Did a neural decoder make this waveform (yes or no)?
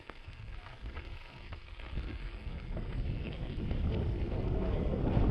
yes